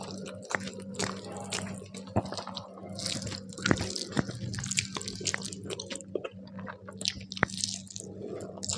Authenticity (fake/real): real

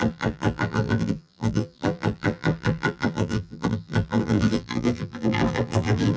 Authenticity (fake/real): fake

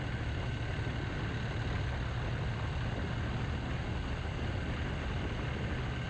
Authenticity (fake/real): real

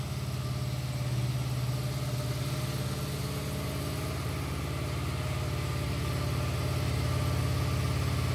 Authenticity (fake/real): real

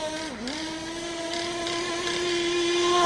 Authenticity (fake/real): real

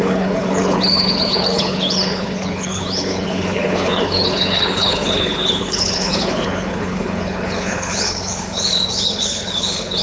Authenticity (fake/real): fake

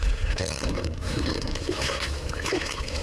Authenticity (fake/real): fake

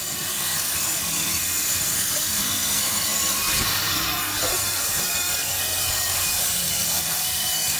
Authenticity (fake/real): fake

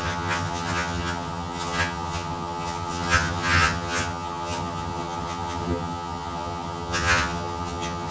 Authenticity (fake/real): fake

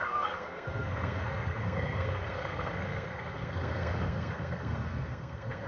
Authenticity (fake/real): fake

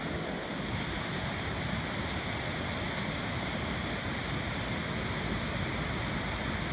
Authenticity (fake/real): real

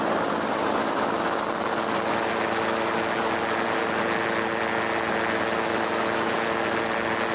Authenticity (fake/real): real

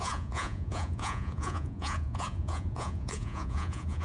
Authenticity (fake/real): fake